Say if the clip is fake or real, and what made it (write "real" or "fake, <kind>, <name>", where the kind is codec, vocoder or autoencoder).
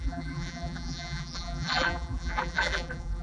fake, vocoder, BigVGAN v2